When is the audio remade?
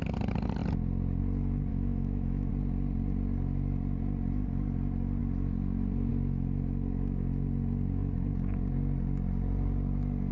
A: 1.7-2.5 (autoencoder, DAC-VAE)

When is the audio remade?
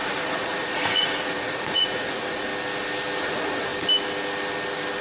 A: 0.0-2.5 (vocoder, Vocos); 3.2-3.7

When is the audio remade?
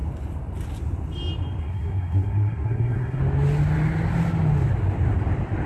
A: 1.6-3.2 (codec, SNAC)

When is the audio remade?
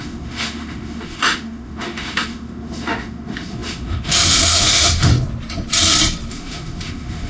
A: 0.0-5.1 (autoencoder, DAC-VAE); 6.3-7.3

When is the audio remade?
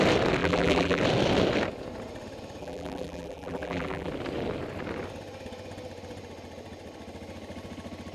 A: 0.4-1.0 (vocoder, BigVGAN v2); 2.6-4.1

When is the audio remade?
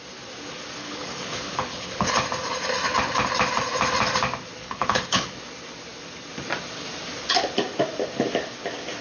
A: 0.8-2.1 (codec, HILCodec); 4.6-5.3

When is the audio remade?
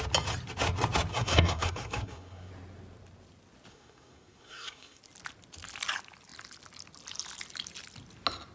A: 1.1-2.5 (codec, SNAC); 3.7-5.0